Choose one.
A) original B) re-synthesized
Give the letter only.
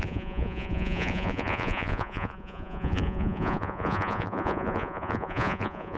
B